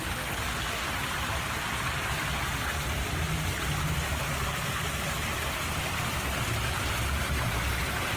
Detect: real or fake real